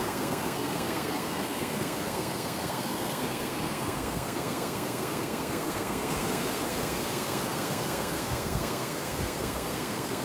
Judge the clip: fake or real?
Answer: fake